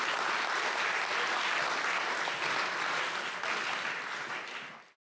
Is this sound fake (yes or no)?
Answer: no